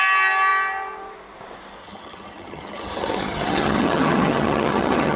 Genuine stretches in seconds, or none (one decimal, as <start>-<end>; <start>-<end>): 0.0-1.8

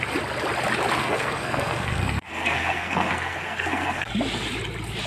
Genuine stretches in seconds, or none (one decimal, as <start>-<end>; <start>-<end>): 0.0-1.0; 4.1-5.1

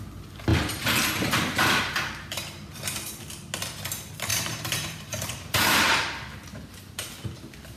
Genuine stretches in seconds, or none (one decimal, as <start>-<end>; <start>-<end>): 0.0-0.5; 3.1-4.3; 6.8-7.8